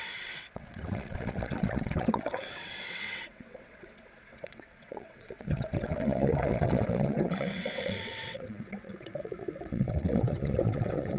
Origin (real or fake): fake